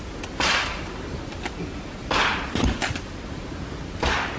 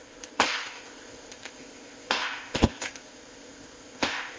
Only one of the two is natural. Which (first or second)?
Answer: first